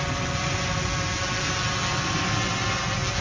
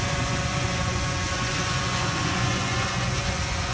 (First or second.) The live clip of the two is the first